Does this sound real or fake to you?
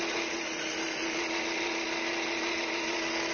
real